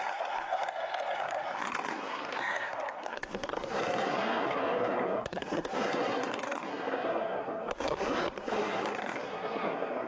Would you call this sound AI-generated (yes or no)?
yes